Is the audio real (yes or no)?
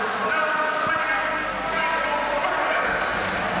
yes